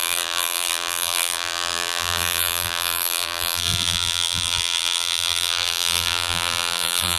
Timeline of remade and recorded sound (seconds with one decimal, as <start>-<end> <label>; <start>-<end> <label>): 0.0-7.2 remade

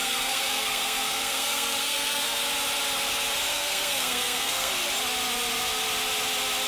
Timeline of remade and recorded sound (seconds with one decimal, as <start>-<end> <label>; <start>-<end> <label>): 0.0-2.4 remade; 2.4-3.5 recorded; 3.5-4.7 remade; 4.7-6.7 recorded

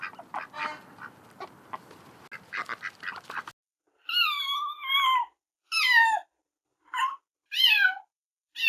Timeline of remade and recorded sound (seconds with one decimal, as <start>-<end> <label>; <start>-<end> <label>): 0.0-8.7 recorded

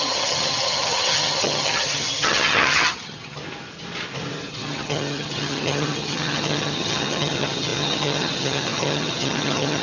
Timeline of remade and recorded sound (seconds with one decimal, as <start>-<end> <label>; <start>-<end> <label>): 0.0-3.4 remade; 3.4-4.5 recorded; 4.5-9.8 remade

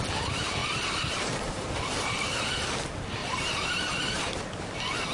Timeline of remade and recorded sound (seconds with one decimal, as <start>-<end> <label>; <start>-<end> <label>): 0.0-0.6 recorded; 0.6-2.4 remade; 2.4-3.2 recorded; 3.2-4.4 remade; 4.4-5.1 recorded